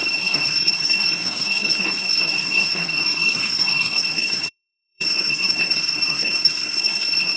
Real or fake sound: fake